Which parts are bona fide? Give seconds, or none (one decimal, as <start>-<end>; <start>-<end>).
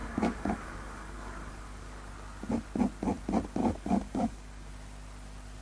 2.1-3.6; 4.7-5.6